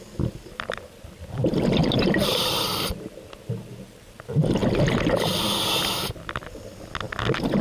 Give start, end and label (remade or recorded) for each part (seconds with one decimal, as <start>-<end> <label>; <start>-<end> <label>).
0.0-1.8 recorded; 1.8-3.1 remade; 3.1-7.6 recorded